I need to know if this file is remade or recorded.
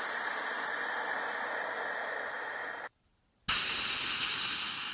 recorded